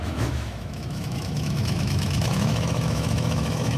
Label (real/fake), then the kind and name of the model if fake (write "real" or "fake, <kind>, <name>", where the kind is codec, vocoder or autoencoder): fake, autoencoder, DAC-VAE